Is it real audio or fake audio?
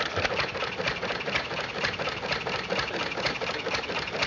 real